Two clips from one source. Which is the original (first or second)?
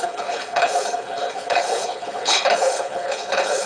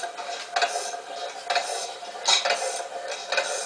second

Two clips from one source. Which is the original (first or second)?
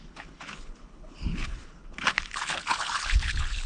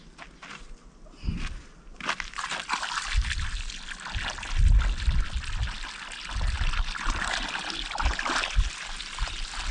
second